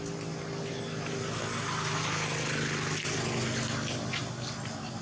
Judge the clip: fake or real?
real